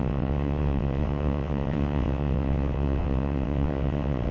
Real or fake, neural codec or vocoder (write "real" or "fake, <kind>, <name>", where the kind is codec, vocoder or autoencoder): fake, vocoder, WaveNeXt